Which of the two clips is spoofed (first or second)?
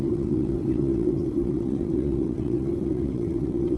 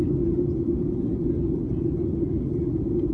first